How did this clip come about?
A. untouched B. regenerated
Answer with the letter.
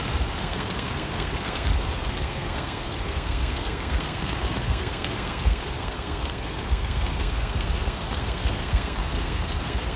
B